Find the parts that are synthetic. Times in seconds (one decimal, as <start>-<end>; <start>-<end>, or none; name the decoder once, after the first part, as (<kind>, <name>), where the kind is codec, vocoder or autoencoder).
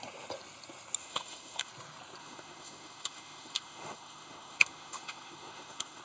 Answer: 1.0-1.7 (autoencoder, DAC-VAE); 2.2-6.0